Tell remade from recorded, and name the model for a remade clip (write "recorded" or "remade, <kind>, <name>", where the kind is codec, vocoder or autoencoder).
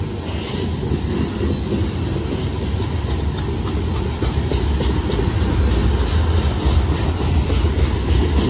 recorded